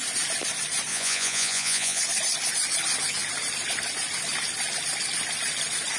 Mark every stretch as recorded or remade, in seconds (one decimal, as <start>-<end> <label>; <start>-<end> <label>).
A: 0.0-0.9 recorded; 0.9-2.0 remade; 2.0-6.0 recorded